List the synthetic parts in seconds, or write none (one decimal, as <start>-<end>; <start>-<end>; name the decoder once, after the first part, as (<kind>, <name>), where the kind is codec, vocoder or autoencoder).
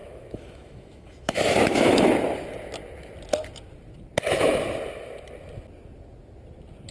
0.0-2.1 (autoencoder, DAC-VAE)